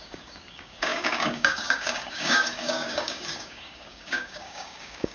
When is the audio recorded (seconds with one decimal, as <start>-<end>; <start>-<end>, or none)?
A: none